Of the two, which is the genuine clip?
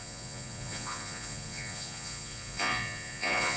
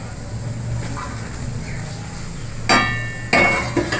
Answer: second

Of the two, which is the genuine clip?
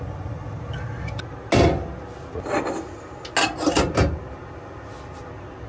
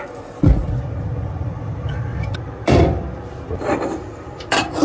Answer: first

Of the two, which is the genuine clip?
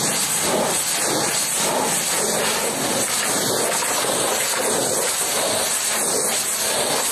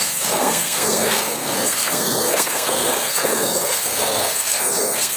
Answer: first